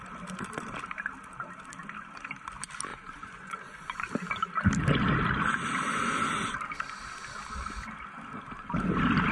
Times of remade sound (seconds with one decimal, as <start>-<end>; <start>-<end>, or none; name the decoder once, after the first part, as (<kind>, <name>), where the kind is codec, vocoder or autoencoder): 2.9-4.1 (vocoder, Vocos)